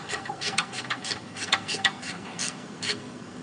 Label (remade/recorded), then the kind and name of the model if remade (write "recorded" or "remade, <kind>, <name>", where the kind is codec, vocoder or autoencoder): remade, codec, SNAC